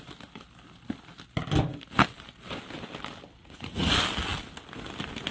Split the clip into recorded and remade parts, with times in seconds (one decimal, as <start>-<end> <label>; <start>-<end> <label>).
0.0-3.4 recorded; 3.4-3.9 remade; 3.9-5.3 recorded